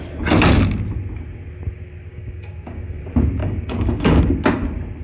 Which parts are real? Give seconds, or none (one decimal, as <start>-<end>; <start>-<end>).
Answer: 0.0-2.1; 3.0-3.4; 4.2-5.0